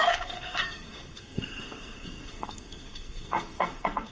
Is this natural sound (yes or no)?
no